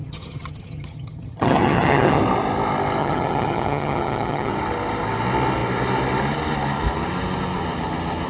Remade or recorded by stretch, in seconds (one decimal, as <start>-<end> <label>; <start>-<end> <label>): 0.0-2.2 remade; 2.2-3.0 recorded; 3.0-4.5 remade; 4.5-8.3 recorded

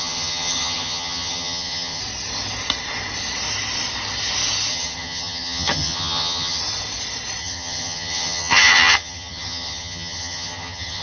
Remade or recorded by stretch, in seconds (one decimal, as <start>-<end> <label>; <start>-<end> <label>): 0.0-2.0 remade; 2.0-4.7 recorded; 4.7-6.6 remade; 6.6-7.4 recorded; 7.4-11.0 remade

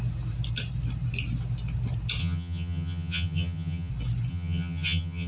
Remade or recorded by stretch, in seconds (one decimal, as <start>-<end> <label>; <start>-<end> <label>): 0.0-2.2 recorded; 2.2-3.9 remade; 3.9-4.3 recorded; 4.3-5.3 remade

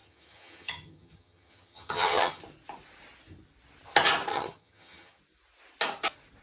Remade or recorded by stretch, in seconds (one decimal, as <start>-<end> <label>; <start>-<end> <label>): 0.0-2.4 remade; 2.4-4.3 recorded; 4.3-5.2 remade; 5.2-6.4 recorded

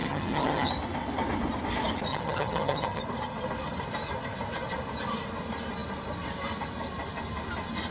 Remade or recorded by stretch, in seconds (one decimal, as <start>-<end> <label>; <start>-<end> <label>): 0.0-0.7 remade; 0.7-2.1 recorded; 2.1-3.0 remade; 3.0-7.9 recorded

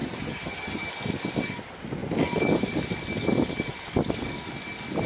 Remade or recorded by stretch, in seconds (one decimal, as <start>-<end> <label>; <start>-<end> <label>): 0.0-0.9 remade; 0.9-5.1 recorded

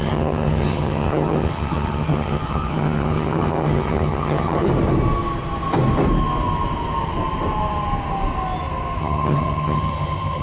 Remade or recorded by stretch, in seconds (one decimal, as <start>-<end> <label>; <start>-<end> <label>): 0.0-4.7 remade; 4.7-9.0 recorded; 9.0-10.4 remade